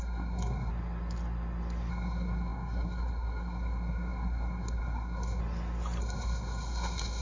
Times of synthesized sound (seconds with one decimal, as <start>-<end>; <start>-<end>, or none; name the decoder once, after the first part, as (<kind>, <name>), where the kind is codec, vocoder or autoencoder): 0.0-0.7 (codec, SNAC); 1.9-5.4; 6.0-7.2